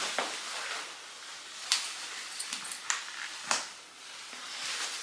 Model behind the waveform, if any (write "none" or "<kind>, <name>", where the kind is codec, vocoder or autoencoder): none